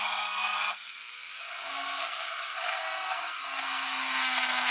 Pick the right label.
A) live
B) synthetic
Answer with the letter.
B